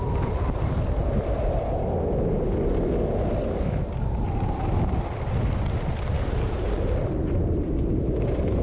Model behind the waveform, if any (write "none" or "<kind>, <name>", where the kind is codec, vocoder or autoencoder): none